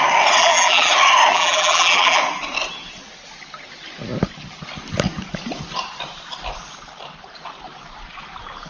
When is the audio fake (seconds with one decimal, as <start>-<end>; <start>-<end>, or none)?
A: 0.4-0.9; 1.3-2.2